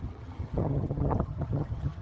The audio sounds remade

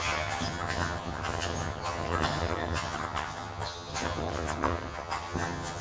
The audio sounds remade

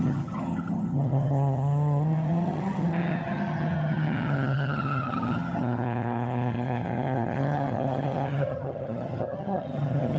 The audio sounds remade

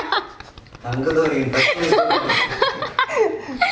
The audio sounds recorded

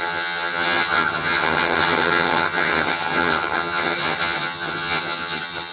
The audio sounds remade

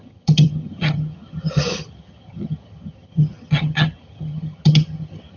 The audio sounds remade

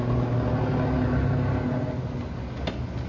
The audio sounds recorded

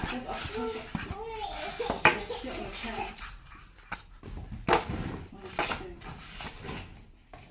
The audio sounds recorded